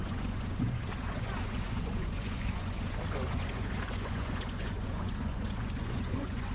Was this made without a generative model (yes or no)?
no